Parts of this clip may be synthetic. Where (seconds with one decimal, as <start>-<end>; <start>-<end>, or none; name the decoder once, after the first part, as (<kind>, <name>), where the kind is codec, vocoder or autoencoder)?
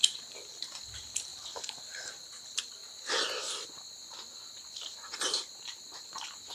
0.0-1.3 (vocoder, BigVGAN v2); 1.9-2.8; 6.0-6.5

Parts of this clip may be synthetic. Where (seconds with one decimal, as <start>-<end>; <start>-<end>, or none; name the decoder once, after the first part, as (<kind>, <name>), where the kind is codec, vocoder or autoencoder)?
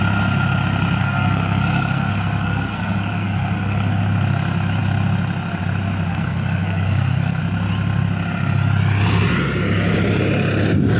1.0-4.0 (codec, SNAC); 6.1-7.4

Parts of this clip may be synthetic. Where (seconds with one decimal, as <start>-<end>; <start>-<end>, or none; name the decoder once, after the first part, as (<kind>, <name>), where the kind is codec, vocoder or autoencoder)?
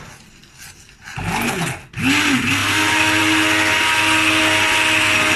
2.6-3.2 (vocoder, BigVGAN v2)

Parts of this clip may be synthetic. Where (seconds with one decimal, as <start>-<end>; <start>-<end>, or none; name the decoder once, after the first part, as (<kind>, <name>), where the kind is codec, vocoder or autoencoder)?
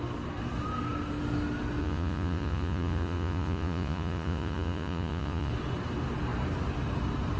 1.8-5.5 (vocoder, Vocos)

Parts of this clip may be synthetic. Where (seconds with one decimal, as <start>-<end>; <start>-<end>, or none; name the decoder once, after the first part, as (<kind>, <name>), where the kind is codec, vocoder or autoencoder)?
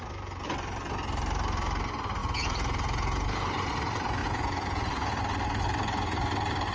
2.2-3.7 (vocoder, Vocos); 4.2-5.2